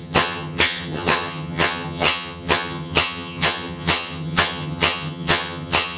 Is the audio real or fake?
fake